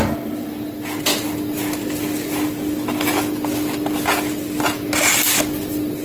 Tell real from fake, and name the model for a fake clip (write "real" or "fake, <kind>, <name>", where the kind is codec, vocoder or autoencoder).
real